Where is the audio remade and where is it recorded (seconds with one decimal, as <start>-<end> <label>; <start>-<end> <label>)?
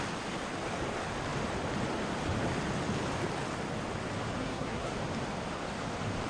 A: 0.0-4.4 recorded; 4.4-4.9 remade; 4.9-6.3 recorded